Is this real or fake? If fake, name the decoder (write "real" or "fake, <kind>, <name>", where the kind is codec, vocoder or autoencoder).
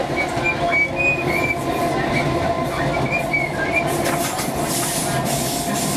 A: real